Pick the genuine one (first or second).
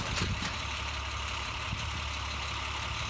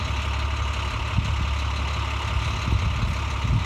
second